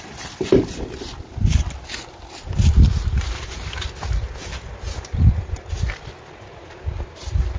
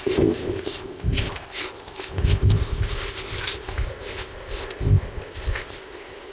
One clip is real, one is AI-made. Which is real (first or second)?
first